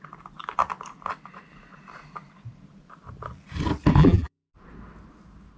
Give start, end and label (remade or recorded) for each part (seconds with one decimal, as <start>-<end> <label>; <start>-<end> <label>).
0.0-4.0 recorded; 4.0-4.5 remade; 4.5-5.6 recorded